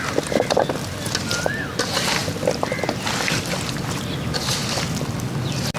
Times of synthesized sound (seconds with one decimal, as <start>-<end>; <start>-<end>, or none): none